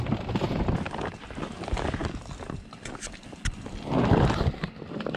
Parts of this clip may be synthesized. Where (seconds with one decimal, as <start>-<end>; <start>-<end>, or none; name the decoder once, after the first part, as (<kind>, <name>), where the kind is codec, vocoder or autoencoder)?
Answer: none